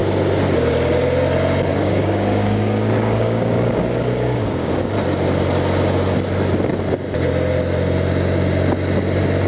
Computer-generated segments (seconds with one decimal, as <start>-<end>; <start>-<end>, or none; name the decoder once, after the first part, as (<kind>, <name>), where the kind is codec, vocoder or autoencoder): 1.7-4.9 (codec, DAC)